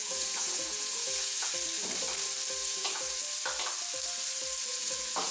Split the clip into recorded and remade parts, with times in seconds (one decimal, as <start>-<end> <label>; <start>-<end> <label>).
0.0-1.5 remade; 1.5-2.6 recorded; 2.6-3.2 remade; 3.2-4.7 recorded; 4.7-5.3 remade